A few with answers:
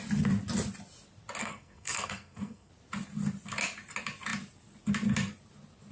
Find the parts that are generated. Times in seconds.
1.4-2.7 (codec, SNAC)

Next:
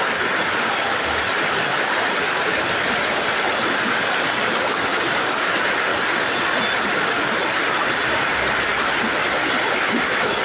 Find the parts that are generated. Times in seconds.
none

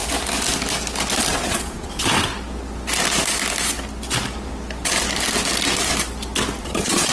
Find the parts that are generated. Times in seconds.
1.3-2.3 (vocoder, Vocos); 6.6-7.1